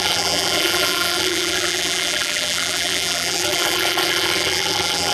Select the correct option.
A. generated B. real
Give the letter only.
A